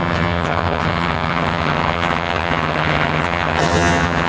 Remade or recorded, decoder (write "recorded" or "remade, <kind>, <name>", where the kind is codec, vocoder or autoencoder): remade, vocoder, HiFi-GAN